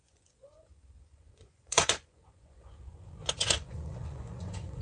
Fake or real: fake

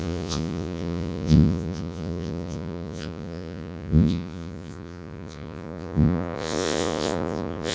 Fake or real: fake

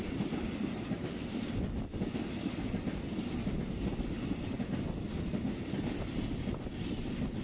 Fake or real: real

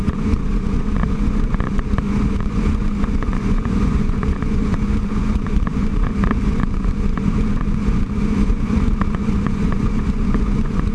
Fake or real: fake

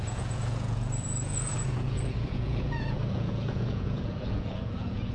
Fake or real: fake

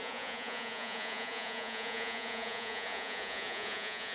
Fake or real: fake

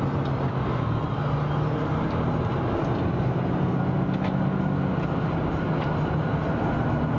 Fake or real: real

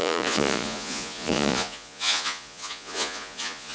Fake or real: fake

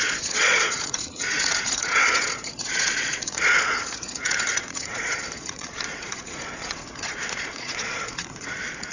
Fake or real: fake